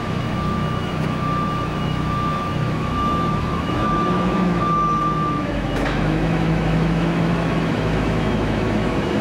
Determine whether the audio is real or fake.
fake